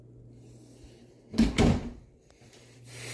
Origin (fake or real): real